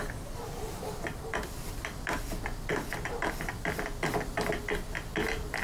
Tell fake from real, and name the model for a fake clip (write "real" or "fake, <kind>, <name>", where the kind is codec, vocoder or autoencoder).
real